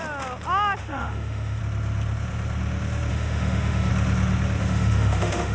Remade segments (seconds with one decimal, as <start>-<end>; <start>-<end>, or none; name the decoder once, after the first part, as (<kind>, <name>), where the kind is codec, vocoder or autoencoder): 0.8-1.6 (autoencoder, DAC-VAE); 3.1-3.9; 4.6-5.5